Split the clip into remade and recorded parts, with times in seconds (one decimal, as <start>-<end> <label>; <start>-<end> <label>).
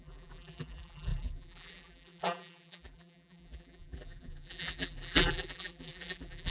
0.0-6.5 remade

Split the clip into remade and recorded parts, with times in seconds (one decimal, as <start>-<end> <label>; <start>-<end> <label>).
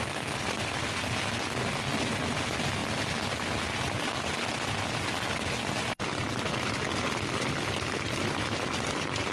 0.0-9.3 recorded